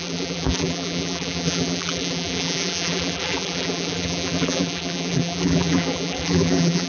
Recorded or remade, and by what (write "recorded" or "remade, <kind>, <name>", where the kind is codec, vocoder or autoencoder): remade, vocoder, BigVGAN v2